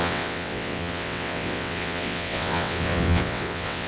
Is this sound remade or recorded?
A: remade